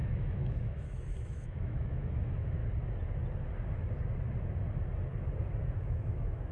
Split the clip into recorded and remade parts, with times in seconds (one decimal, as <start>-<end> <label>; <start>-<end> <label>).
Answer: 0.0-2.6 remade; 2.6-5.8 recorded; 5.8-6.5 remade